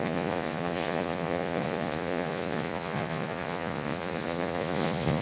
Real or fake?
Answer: fake